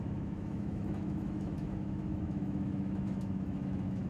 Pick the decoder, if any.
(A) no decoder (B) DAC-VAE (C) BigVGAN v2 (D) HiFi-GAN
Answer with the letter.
B